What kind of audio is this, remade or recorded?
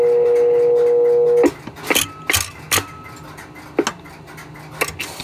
recorded